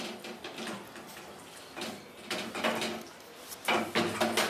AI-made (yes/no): no